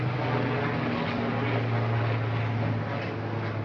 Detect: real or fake real